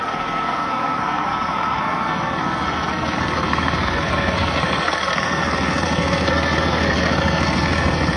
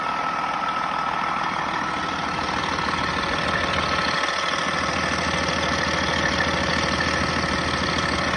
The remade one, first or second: first